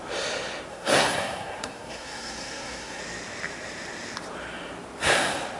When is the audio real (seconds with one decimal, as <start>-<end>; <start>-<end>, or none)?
0.0-0.7; 3.0-5.6